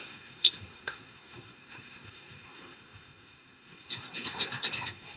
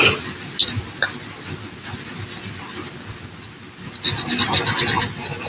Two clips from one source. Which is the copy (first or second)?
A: first